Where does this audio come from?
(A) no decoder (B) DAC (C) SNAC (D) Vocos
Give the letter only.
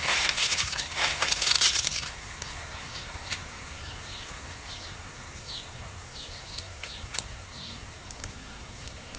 C